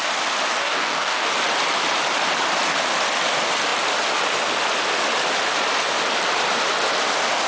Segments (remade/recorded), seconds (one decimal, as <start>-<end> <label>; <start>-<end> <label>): 0.0-0.6 recorded; 0.6-1.3 remade; 1.3-7.5 recorded